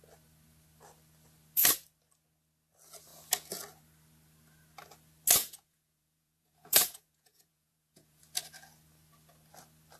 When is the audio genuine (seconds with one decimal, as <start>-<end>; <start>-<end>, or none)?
0.0-5.4; 8.2-10.0